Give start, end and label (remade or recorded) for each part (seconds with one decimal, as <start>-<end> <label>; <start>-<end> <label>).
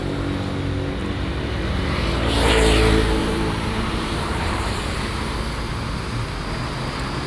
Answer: 0.0-1.0 recorded; 1.0-2.5 remade; 2.5-3.2 recorded; 3.2-4.8 remade; 4.8-7.3 recorded